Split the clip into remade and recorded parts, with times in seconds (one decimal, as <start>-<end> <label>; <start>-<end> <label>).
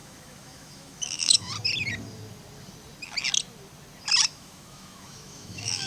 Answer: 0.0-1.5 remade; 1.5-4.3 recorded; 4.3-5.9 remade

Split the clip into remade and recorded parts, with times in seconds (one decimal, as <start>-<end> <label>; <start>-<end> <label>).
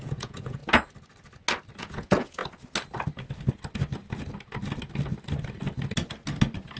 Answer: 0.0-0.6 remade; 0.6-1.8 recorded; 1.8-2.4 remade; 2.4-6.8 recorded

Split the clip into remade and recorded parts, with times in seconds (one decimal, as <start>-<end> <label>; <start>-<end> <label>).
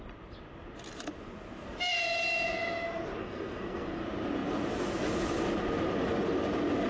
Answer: 0.0-3.2 recorded; 3.2-4.0 remade; 4.0-6.9 recorded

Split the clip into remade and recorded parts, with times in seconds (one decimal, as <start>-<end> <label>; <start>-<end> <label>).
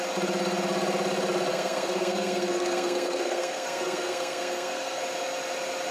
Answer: 0.0-1.5 recorded; 1.5-5.0 remade; 5.0-5.9 recorded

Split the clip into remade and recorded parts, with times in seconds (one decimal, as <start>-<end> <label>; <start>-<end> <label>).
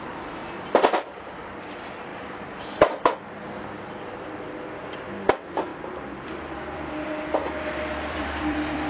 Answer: 0.0-0.4 remade; 0.4-1.4 recorded; 1.4-2.1 remade; 2.1-5.3 recorded; 5.3-8.9 remade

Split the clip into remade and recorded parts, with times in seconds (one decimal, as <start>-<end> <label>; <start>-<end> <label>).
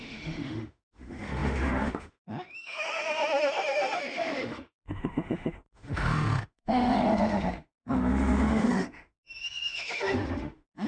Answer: 0.0-10.9 remade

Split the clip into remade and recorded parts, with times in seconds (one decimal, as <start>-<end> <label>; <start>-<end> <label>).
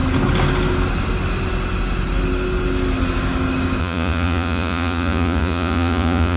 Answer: 0.0-3.8 recorded; 3.8-6.4 remade